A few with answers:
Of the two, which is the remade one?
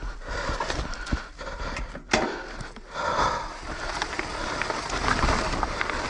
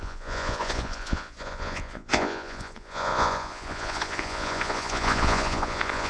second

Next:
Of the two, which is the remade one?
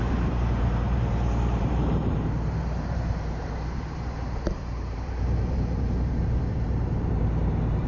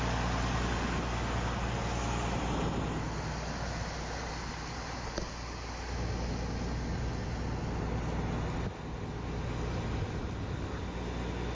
first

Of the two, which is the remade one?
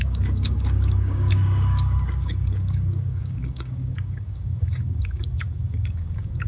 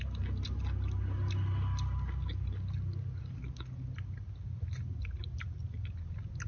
first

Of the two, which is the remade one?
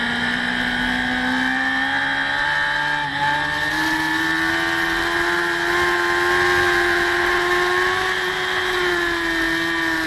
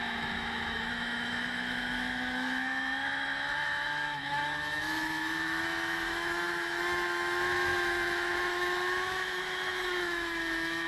second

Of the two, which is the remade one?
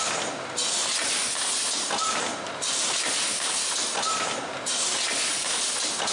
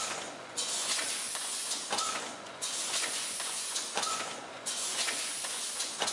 second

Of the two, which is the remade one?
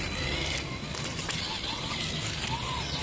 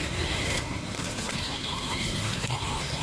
second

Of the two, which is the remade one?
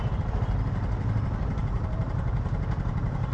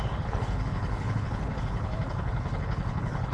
second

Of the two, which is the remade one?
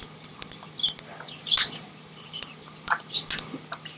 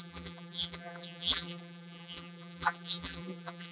second